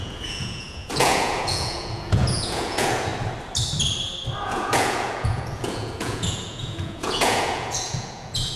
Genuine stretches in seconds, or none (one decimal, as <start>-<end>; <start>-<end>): 3.1-4.4